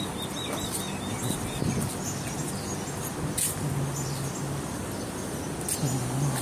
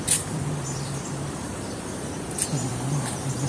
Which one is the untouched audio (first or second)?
first